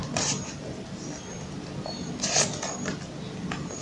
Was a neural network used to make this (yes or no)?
no